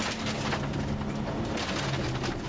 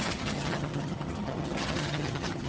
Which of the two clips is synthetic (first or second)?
second